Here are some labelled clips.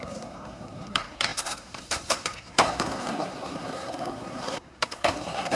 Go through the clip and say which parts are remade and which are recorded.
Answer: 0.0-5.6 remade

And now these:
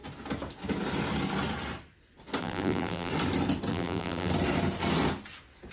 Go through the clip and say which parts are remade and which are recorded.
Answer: 0.0-2.4 recorded; 2.4-3.1 remade; 3.1-3.7 recorded; 3.7-4.3 remade; 4.3-5.7 recorded

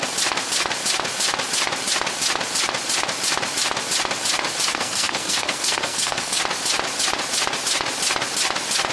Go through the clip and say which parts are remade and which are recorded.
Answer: 0.0-4.7 recorded; 4.7-6.4 remade; 6.4-8.9 recorded

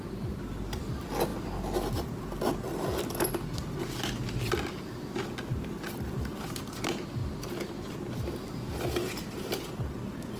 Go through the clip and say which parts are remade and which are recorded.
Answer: 0.0-10.4 recorded

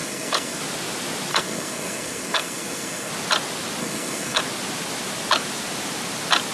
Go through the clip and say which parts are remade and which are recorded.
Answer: 0.0-0.6 remade; 0.6-1.3 recorded; 1.3-3.1 remade; 3.1-3.8 recorded; 3.8-4.4 remade; 4.4-6.5 recorded

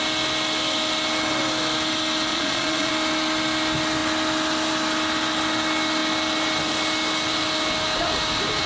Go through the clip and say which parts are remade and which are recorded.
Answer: 0.0-2.3 recorded; 2.3-2.9 remade; 2.9-8.7 recorded

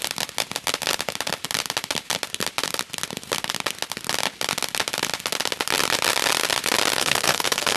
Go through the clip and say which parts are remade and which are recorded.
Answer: 0.0-7.0 recorded; 7.0-7.8 remade

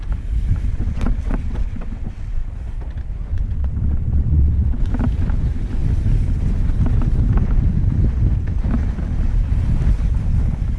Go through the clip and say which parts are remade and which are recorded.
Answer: 0.0-0.7 recorded; 0.7-2.5 remade; 2.5-3.3 recorded; 3.3-4.9 remade; 4.9-10.8 recorded